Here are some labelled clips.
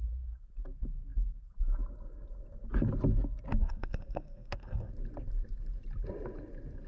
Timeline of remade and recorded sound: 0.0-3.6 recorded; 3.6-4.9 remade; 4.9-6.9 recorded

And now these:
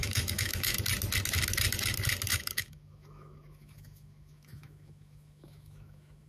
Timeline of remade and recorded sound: 0.0-0.8 remade; 0.8-2.3 recorded; 2.3-6.3 remade

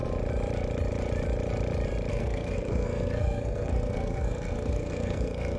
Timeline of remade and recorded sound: 0.0-2.1 recorded; 2.1-5.6 remade

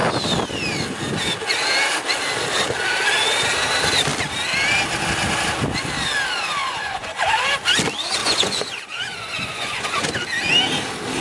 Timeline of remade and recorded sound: 0.0-6.6 recorded; 6.6-7.1 remade; 7.1-8.2 recorded; 8.2-10.1 remade; 10.1-11.2 recorded